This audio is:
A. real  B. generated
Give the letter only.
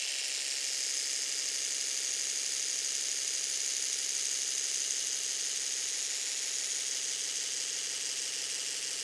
A